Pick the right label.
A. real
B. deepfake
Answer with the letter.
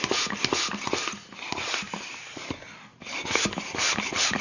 A